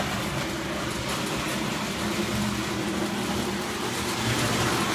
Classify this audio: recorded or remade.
recorded